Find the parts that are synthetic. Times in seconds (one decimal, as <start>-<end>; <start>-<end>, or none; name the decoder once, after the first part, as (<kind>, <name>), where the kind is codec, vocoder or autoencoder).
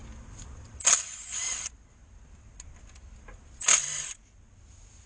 none